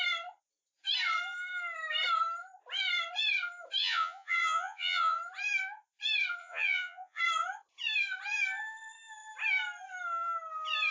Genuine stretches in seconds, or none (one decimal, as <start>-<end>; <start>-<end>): 0.0-3.8; 5.2-6.4; 7.2-10.9